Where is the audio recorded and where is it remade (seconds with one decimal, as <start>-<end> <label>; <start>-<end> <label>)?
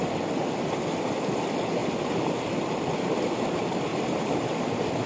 0.0-3.9 recorded; 3.9-4.6 remade; 4.6-5.1 recorded